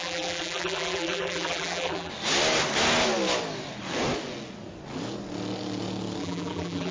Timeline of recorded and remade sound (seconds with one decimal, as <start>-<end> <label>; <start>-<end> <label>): 0.0-2.1 remade; 2.1-6.2 recorded; 6.2-6.9 remade